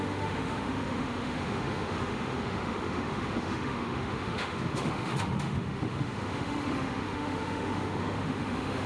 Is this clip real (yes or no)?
no